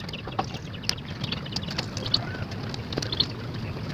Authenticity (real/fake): real